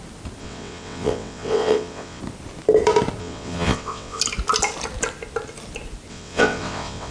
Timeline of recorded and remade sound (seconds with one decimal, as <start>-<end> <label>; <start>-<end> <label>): 0.0-0.4 recorded; 0.4-2.2 remade; 2.2-3.2 recorded; 3.2-4.2 remade; 4.2-6.1 recorded; 6.1-7.1 remade